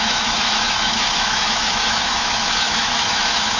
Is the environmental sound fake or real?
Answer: fake